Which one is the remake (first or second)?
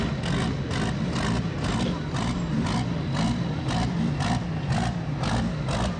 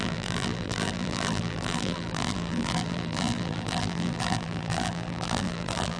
second